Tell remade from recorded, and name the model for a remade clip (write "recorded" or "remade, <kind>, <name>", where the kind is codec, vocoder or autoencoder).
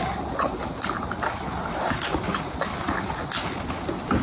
recorded